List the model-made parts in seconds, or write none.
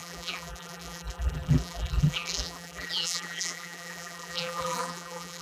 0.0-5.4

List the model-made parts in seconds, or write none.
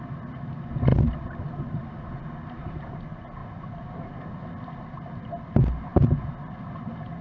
none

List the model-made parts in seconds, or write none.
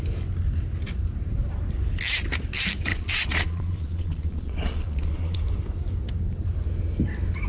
2.9-5.4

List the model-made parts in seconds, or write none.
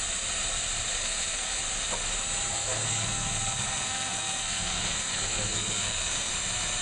1.0-1.6; 2.5-6.3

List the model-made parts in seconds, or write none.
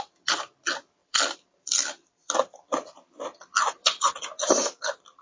1.0-4.1